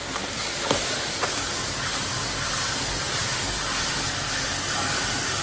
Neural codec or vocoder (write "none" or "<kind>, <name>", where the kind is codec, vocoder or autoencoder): none